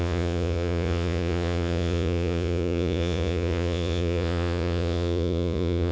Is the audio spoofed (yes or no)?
yes